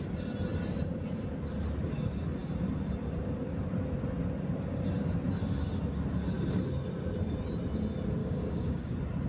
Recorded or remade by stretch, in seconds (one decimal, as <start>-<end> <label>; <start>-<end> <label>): 0.0-8.2 recorded; 8.2-8.9 remade; 8.9-9.3 recorded